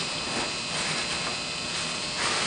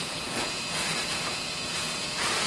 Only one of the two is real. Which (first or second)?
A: first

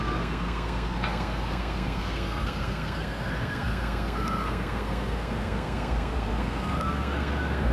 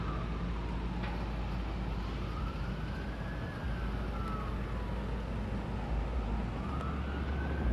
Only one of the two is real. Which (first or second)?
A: second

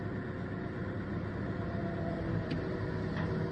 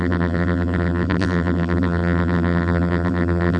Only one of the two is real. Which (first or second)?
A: first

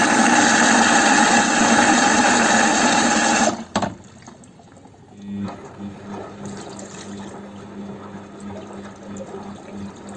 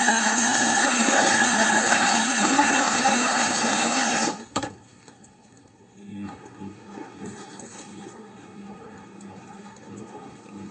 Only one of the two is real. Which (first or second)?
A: first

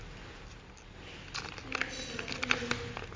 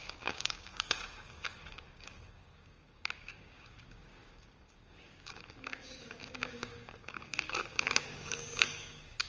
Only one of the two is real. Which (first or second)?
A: first